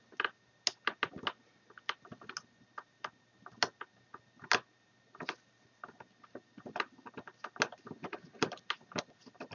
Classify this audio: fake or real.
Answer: real